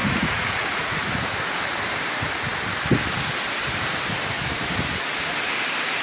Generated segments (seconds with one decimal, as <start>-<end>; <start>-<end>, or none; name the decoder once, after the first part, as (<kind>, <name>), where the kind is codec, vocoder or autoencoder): 0.0-1.1 (vocoder, Vocos)